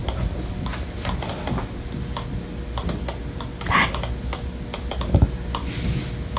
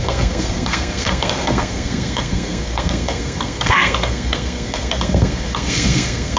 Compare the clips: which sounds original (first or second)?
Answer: first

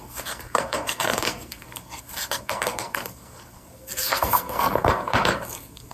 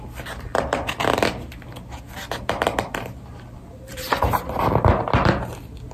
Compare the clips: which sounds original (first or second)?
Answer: second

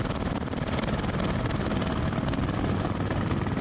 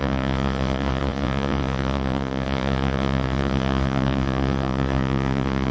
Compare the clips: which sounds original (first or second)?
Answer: first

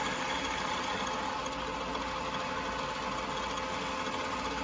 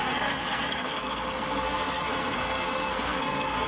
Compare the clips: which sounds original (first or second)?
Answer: first